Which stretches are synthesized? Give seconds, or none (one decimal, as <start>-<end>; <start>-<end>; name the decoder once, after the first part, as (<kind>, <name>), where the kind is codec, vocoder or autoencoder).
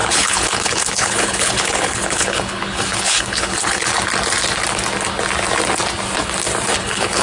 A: 0.0-3.9 (codec, HILCodec); 6.8-7.2